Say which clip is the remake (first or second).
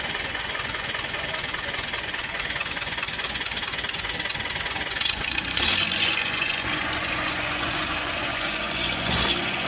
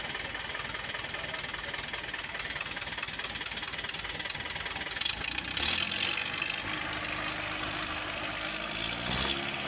first